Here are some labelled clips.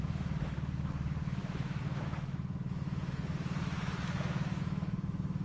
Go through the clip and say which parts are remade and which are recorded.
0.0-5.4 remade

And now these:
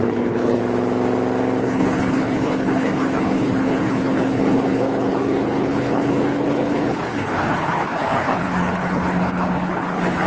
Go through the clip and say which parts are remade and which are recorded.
0.0-0.6 remade; 0.6-1.6 recorded; 1.6-10.3 remade

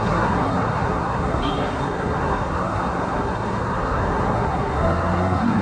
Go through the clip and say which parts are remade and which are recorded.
0.0-5.6 remade

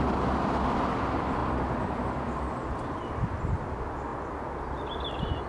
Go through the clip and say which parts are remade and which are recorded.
0.0-1.4 recorded; 1.4-3.4 remade; 3.4-5.5 recorded

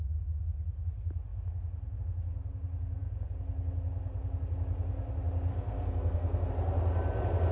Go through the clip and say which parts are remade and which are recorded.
0.0-5.5 recorded; 5.5-6.5 remade; 6.5-7.5 recorded

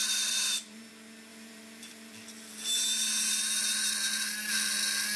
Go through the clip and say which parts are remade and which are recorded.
0.0-0.9 remade; 0.9-1.3 recorded; 1.3-2.8 remade; 2.8-5.2 recorded